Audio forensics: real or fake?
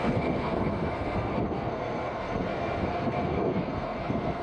fake